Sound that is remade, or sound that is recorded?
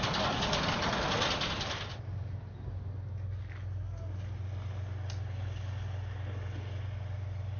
recorded